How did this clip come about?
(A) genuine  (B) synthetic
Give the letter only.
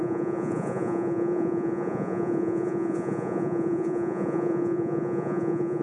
B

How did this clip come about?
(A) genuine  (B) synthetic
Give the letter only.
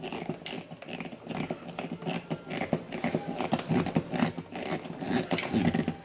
A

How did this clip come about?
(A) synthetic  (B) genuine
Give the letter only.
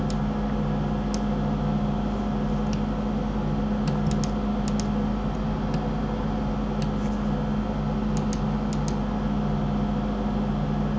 B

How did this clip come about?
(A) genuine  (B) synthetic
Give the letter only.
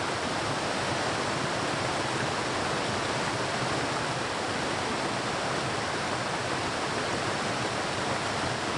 A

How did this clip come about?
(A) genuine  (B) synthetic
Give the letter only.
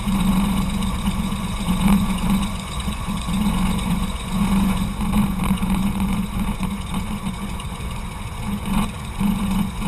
B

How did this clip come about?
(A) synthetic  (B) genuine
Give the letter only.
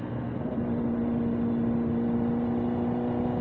B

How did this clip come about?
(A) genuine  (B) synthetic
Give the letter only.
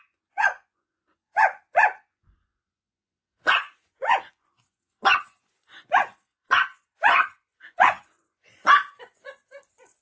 B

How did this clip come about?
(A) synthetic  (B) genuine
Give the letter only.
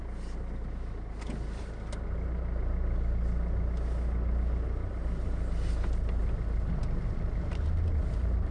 B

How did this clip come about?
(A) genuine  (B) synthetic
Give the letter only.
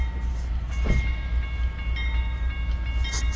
A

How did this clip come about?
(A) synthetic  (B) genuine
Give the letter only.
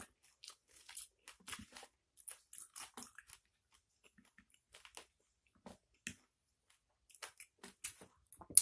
B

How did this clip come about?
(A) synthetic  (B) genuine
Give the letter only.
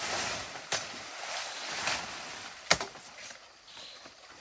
B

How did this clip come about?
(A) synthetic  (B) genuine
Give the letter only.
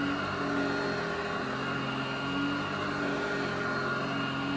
B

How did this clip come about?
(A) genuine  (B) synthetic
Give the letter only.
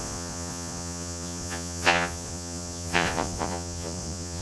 B